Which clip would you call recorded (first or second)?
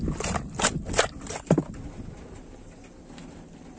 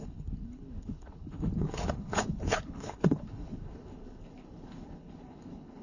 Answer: first